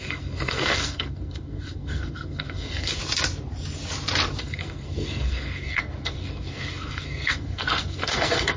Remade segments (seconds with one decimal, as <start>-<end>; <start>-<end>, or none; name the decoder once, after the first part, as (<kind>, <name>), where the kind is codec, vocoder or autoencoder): 0.0-3.0 (codec, SNAC); 4.4-8.6